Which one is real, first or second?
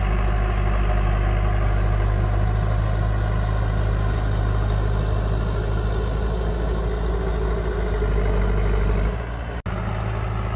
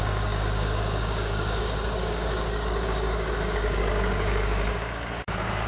first